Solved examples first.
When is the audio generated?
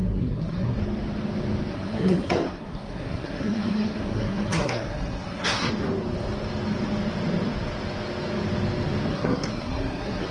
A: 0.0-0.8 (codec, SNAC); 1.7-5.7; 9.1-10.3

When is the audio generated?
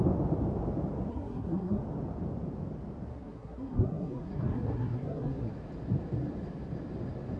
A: 1.1-1.8 (codec, SNAC); 3.1-5.5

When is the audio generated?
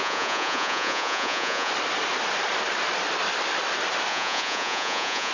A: 0.0-1.7 (vocoder, Vocos); 4.1-5.3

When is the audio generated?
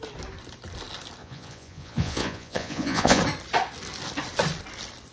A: 1.2-3.2 (vocoder, Vocos)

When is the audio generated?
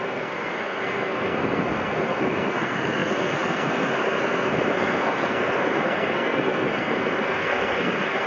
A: 0.0-8.3 (codec, SNAC)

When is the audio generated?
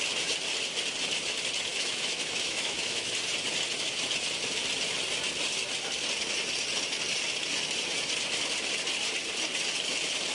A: 1.7-3.1 (autoencoder, DAC-VAE)